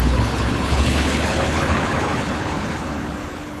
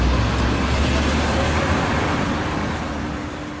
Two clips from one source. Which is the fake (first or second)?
first